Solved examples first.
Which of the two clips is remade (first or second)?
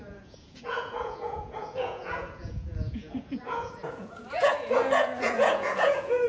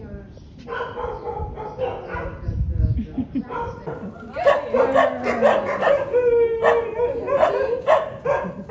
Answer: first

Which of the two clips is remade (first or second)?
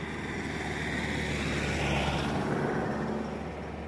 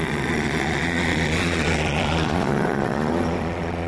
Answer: second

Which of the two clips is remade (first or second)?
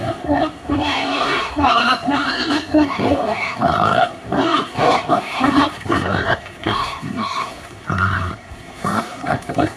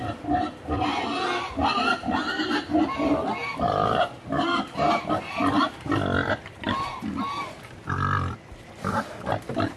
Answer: first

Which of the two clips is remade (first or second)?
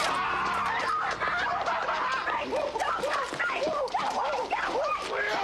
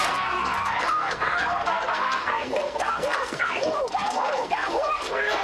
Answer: second